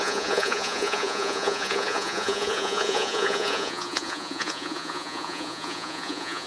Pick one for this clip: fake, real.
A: fake